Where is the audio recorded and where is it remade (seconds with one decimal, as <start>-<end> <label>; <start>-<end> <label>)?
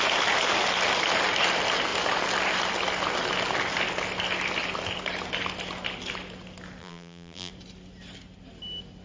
0.0-6.8 recorded; 6.8-7.5 remade; 7.5-9.0 recorded